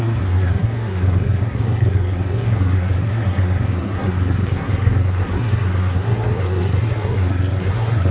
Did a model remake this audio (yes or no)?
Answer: yes